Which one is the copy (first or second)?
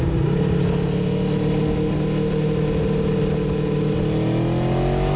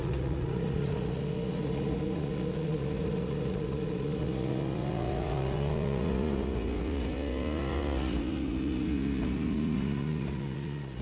second